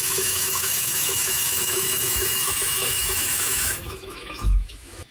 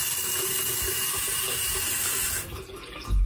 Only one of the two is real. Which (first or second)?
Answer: second